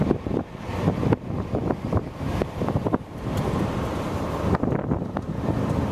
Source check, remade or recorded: recorded